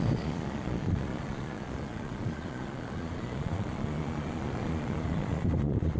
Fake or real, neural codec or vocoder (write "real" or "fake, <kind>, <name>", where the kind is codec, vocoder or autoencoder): fake, vocoder, Vocos